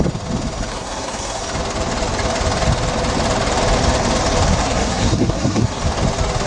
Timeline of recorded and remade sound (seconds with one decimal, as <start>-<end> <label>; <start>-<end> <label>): 0.0-0.7 recorded; 0.7-1.4 remade; 1.4-4.6 recorded; 4.6-5.8 remade; 5.8-6.5 recorded

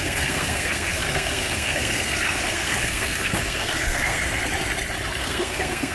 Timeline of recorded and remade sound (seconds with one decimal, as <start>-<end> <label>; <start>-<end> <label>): 0.0-4.2 remade; 4.2-5.2 recorded; 5.2-5.9 remade

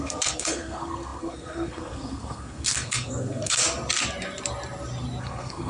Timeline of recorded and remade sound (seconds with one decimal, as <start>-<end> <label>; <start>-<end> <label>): 0.0-3.6 remade; 3.6-5.2 recorded; 5.2-5.7 remade

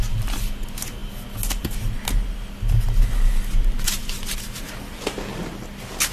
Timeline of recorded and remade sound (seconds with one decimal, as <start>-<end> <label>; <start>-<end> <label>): 0.0-6.1 recorded

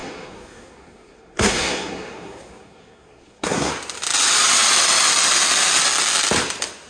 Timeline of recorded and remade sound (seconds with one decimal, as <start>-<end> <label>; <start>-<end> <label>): 0.0-3.7 remade; 3.7-6.9 recorded

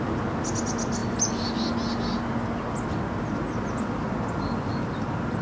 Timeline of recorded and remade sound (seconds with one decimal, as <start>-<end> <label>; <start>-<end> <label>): 0.0-5.4 recorded

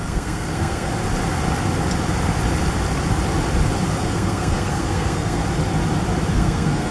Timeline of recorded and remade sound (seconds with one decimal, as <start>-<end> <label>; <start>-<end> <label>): 0.0-0.9 remade; 0.9-4.0 recorded; 4.0-5.4 remade; 5.4-6.3 recorded; 6.3-6.9 remade

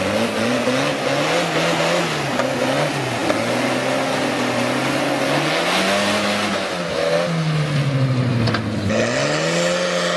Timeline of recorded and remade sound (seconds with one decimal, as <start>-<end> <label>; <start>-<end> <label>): 0.0-10.2 recorded